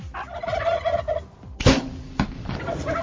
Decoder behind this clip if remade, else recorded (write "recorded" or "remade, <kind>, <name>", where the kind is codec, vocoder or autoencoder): recorded